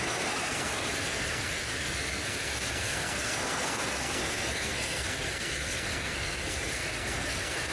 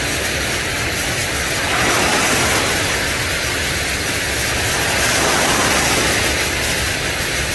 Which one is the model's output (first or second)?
first